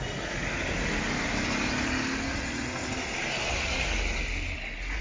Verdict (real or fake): real